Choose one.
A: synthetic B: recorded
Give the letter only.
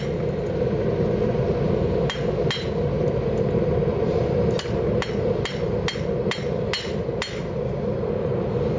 B